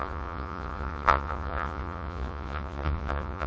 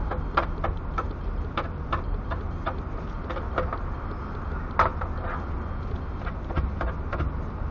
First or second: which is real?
second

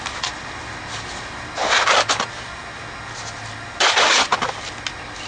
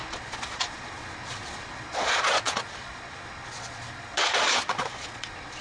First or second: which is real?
first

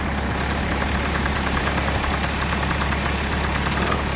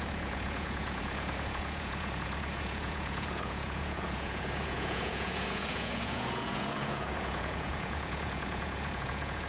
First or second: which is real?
first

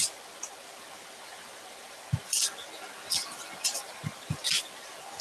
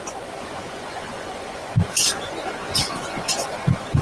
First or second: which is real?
first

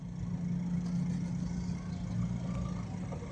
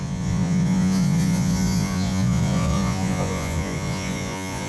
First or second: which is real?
first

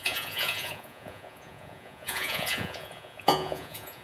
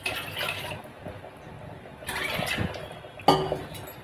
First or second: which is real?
second